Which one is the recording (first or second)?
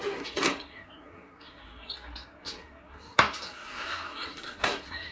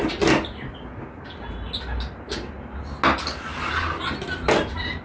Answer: second